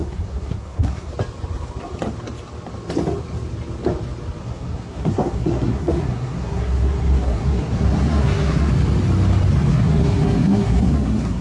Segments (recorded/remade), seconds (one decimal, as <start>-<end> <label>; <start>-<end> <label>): 0.0-1.1 remade; 1.1-4.4 recorded; 4.4-8.7 remade; 8.7-9.7 recorded; 9.7-11.4 remade